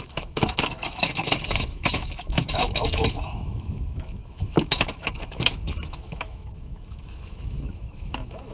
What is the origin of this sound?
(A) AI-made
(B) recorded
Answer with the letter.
A